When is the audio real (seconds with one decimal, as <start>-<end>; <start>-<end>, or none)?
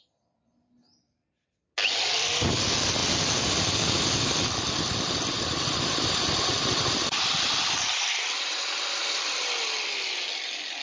0.0-10.8